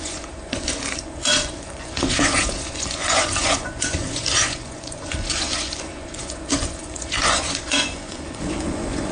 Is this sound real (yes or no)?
no